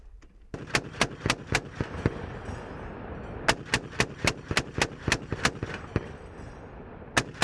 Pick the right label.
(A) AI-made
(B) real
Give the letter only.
B